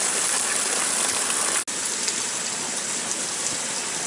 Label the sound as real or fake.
real